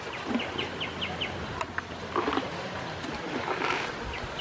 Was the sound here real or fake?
real